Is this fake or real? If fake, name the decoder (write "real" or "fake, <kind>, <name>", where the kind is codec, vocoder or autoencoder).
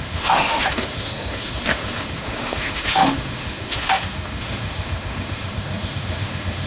fake, autoencoder, DAC-VAE